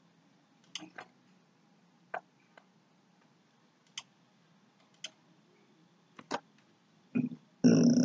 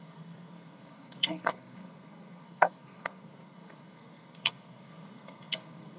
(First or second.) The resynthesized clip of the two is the second